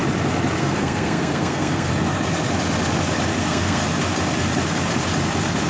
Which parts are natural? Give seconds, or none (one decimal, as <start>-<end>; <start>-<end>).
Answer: 0.0-0.6; 1.9-3.4; 3.8-5.7